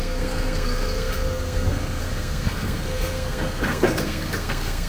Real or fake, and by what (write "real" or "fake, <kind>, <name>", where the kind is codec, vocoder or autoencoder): fake, codec, SNAC